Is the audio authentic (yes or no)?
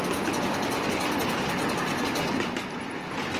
yes